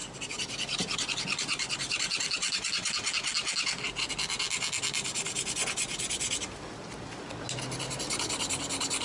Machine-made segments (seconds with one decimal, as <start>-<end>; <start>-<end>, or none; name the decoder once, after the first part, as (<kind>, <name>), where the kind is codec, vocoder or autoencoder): none